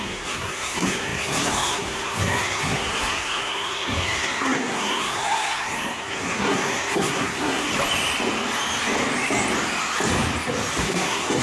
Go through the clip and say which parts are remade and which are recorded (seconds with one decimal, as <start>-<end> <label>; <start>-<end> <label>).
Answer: 0.0-7.7 remade; 7.7-10.8 recorded; 10.8-11.4 remade